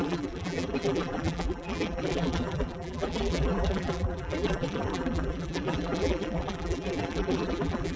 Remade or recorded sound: remade